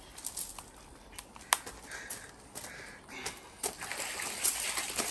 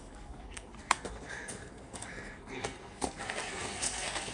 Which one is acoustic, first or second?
first